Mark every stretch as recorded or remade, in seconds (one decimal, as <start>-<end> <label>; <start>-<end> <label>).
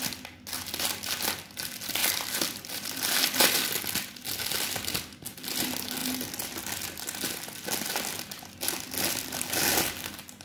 0.0-2.0 recorded; 2.0-3.8 remade; 3.8-10.4 recorded